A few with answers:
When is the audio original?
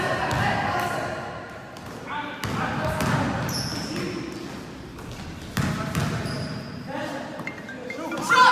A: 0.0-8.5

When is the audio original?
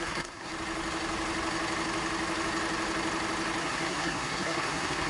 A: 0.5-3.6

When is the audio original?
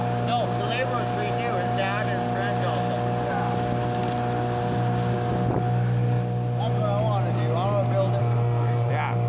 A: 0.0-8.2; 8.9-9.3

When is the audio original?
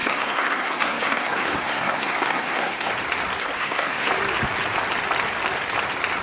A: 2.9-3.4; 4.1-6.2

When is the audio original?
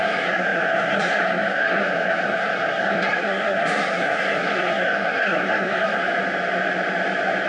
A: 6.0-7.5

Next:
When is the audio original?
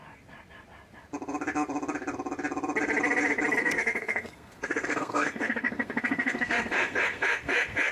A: 0.0-3.6